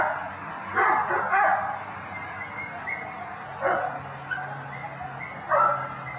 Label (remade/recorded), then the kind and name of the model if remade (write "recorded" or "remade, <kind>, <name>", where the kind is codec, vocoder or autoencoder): recorded